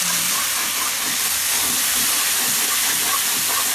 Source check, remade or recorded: recorded